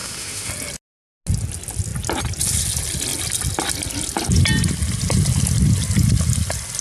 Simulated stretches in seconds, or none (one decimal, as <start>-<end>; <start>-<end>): 0.0-0.5